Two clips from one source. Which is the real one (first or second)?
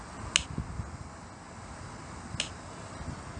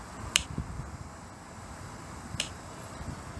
first